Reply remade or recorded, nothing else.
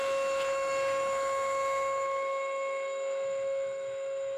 remade